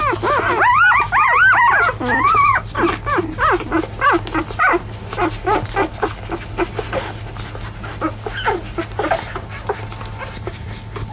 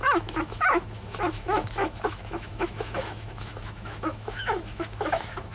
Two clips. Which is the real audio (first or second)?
first